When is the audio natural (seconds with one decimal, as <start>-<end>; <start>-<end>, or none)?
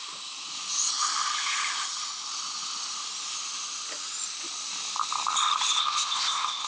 0.0-5.8